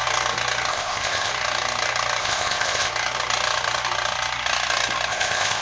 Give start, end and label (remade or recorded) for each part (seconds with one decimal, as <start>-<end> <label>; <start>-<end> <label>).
0.0-0.7 recorded; 0.7-1.3 remade; 1.3-2.2 recorded; 2.2-2.9 remade; 2.9-5.1 recorded; 5.1-5.6 remade